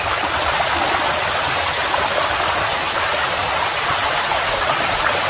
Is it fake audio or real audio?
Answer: real